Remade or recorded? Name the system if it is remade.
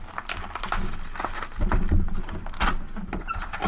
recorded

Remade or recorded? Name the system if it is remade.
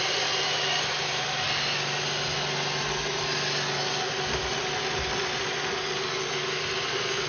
recorded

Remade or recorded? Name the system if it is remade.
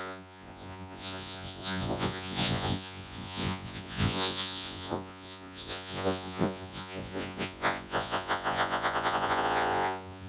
remade, vocoder, Vocos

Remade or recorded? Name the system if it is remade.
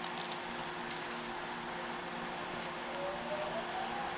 recorded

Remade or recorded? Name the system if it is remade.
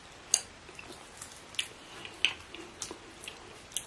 recorded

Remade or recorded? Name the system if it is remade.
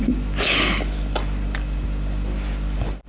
recorded